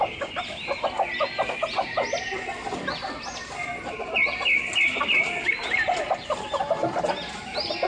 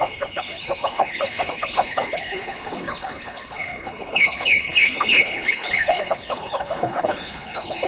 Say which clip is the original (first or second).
first